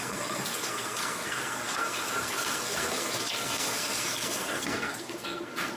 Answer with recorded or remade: remade